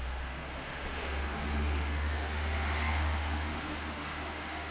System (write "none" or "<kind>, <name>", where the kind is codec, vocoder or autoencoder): autoencoder, DAC-VAE